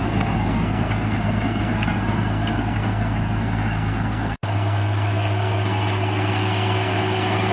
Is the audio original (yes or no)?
no